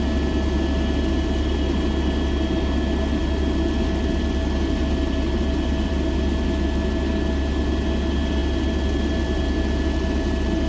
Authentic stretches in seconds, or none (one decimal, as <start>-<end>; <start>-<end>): 0.0-10.7